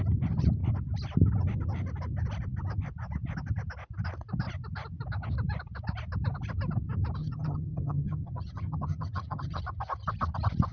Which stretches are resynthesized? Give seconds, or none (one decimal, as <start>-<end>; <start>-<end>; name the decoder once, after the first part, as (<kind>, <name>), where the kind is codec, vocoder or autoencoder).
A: 7.2-9.6 (vocoder, HiFi-GAN)